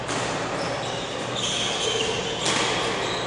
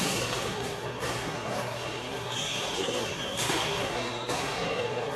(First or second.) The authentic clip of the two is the first